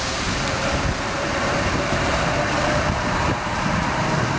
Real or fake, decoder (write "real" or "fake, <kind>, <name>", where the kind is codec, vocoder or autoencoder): fake, vocoder, BigVGAN v2